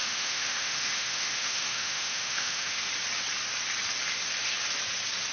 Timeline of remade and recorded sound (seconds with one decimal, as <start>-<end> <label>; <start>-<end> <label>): 0.0-2.9 remade; 2.9-5.3 recorded